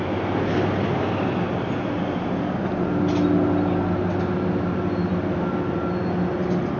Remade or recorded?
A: recorded